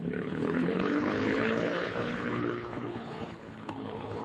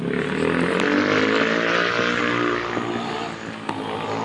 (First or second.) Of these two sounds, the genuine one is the second